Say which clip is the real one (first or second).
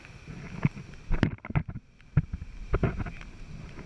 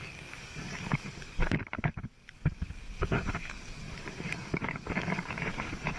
first